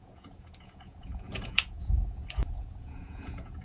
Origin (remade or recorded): remade